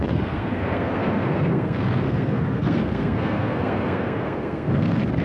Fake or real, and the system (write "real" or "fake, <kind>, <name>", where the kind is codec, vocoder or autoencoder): fake, codec, SNAC